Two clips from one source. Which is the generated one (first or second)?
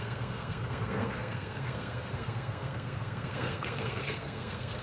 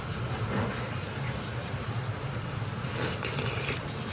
first